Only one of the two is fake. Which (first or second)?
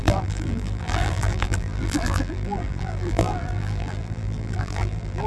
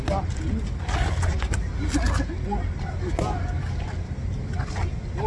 first